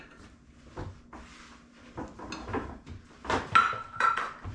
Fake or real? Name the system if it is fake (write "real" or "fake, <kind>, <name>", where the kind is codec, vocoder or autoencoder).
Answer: real